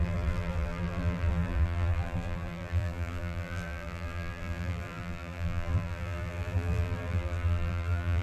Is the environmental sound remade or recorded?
remade